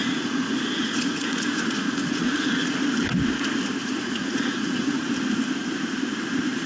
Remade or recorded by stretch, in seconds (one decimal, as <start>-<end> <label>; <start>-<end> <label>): 0.0-2.8 remade; 2.8-3.8 recorded; 3.8-5.0 remade; 5.0-6.7 recorded